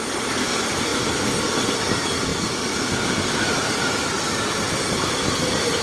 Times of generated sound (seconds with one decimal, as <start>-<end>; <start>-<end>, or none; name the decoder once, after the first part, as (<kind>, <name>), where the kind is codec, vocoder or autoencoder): 0.0-0.9 (vocoder, BigVGAN v2); 1.5-2.3